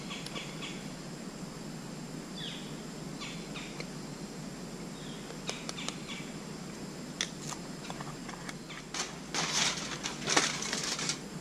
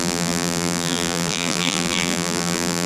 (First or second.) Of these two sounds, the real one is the first